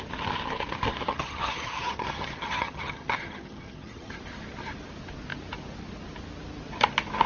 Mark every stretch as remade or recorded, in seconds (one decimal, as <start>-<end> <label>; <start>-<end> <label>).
0.0-1.1 recorded; 1.1-4.1 remade; 4.1-7.3 recorded